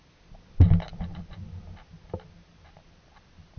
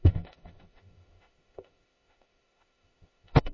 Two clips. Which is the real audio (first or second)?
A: first